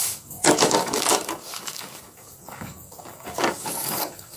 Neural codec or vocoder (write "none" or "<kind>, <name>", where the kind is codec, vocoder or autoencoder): codec, DAC